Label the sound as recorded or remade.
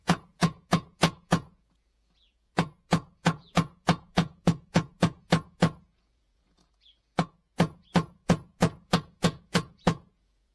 remade